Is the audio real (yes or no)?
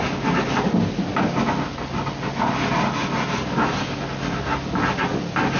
yes